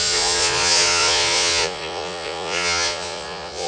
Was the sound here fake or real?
fake